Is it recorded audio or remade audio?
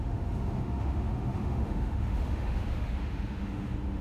remade